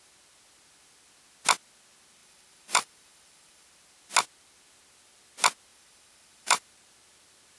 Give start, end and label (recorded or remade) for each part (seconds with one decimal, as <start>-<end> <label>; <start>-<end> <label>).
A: 0.0-2.2 recorded; 2.2-3.7 remade; 3.7-5.7 recorded; 5.7-6.7 remade; 6.7-7.6 recorded